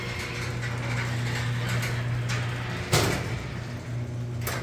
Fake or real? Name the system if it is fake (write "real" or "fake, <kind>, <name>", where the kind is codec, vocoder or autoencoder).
real